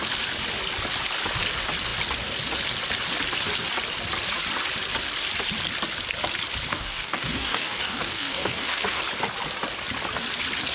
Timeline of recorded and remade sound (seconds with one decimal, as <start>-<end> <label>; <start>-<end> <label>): 0.0-6.7 recorded; 6.7-9.0 remade; 9.0-10.7 recorded